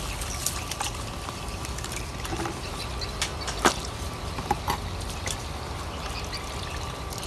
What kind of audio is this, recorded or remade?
recorded